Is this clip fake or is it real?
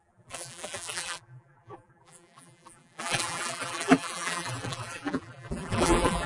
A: fake